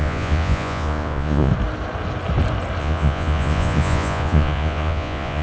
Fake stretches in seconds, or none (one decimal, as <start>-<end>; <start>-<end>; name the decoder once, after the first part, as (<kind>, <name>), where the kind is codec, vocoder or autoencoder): 0.0-1.5 (vocoder, Vocos); 2.8-5.4